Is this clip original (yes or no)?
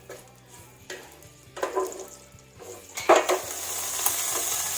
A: yes